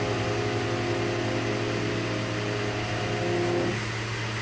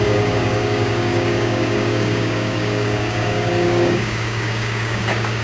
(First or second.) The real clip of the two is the first